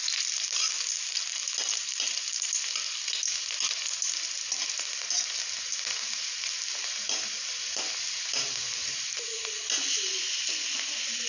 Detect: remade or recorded recorded